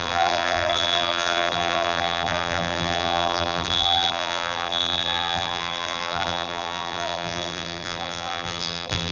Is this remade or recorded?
remade